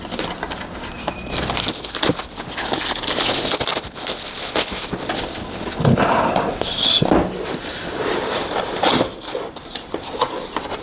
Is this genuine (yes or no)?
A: no